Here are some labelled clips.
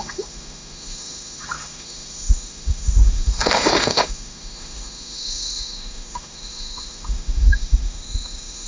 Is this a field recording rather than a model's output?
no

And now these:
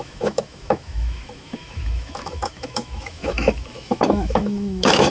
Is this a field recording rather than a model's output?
no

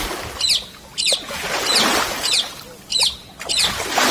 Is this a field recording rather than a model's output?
yes